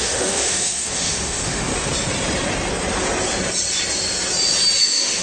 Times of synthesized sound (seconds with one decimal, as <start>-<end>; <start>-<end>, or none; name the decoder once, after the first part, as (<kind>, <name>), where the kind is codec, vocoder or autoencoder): 0.0-1.7 (autoencoder, DAC-VAE); 4.8-5.2